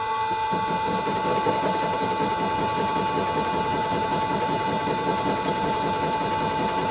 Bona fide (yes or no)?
yes